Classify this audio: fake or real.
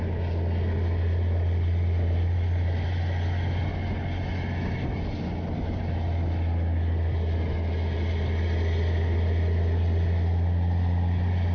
real